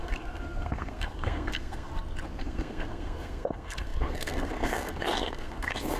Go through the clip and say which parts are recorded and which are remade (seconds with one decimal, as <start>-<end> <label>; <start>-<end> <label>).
0.0-1.9 remade; 1.9-2.4 recorded; 2.4-6.0 remade